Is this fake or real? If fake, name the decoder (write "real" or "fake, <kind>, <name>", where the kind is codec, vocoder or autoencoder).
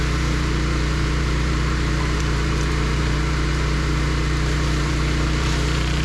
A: fake, vocoder, BigVGAN v2